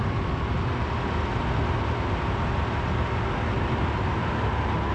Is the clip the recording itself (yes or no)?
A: yes